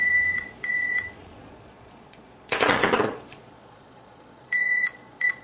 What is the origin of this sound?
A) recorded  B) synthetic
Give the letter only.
B